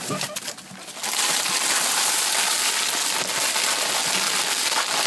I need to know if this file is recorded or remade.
recorded